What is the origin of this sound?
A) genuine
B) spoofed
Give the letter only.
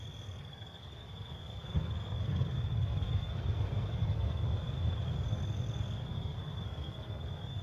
B